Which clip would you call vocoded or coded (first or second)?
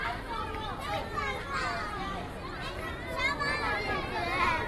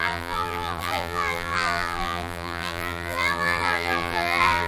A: second